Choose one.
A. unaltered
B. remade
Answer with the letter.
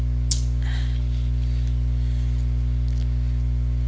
A